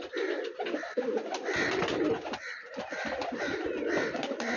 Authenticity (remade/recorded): recorded